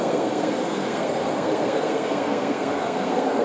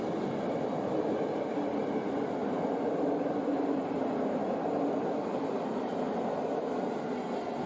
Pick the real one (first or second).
second